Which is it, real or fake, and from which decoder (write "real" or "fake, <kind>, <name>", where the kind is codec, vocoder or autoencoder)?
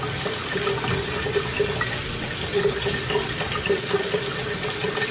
real